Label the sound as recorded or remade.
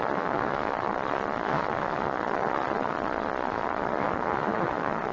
remade